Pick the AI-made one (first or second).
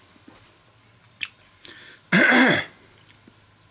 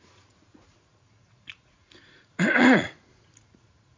second